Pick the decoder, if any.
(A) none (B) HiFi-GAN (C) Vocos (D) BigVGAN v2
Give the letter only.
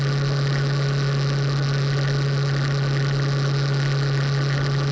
A